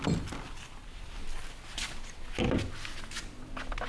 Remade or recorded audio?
recorded